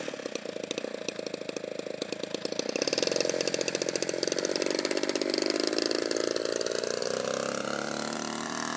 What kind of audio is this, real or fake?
real